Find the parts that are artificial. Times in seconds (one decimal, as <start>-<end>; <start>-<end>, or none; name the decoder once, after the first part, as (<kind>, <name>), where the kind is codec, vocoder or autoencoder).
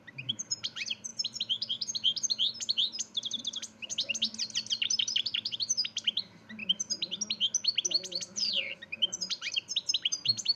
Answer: 0.0-3.9 (vocoder, BigVGAN v2); 4.7-6.6; 8.5-10.6